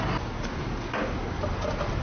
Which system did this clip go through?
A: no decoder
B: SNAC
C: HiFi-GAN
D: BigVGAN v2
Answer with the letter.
A